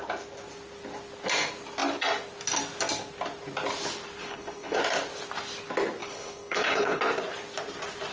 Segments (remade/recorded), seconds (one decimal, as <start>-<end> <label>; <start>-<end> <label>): 0.0-4.2 recorded; 4.2-4.8 remade; 4.8-6.0 recorded; 6.0-7.0 remade; 7.0-8.1 recorded